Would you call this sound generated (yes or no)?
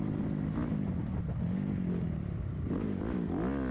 no